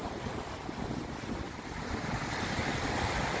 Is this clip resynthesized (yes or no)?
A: no